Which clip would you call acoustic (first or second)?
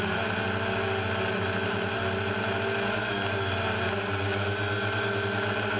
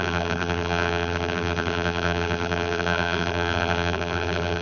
first